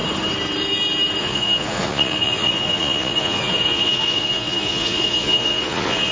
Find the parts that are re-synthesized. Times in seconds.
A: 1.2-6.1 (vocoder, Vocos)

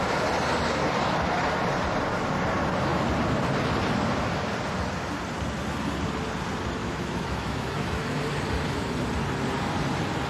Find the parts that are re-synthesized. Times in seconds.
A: 6.8-8.2 (autoencoder, DAC-VAE)

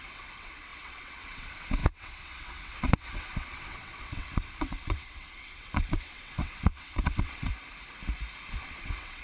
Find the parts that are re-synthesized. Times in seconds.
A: 0.0-7.5 (vocoder, WaveNeXt); 8.5-9.2

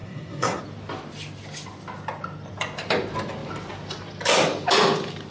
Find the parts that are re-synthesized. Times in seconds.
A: 0.0-0.6 (codec, SNAC)